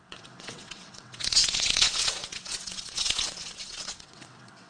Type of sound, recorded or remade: remade